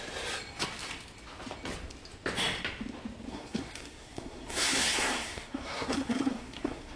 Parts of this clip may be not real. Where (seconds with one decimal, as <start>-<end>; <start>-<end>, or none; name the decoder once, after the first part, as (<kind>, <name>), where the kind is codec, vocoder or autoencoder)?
3.3-7.0 (codec, SNAC)